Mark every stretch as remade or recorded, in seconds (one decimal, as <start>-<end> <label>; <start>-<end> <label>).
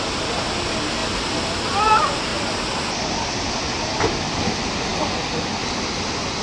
0.0-6.4 recorded